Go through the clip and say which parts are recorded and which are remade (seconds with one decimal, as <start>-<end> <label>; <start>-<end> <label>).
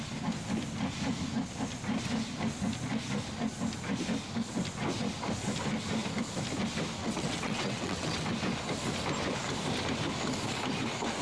0.0-7.0 recorded; 7.0-8.3 remade; 8.3-11.2 recorded